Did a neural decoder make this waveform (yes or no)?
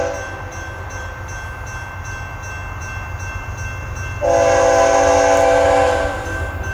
no